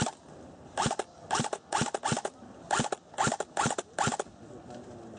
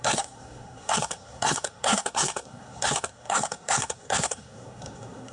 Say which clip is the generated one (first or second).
second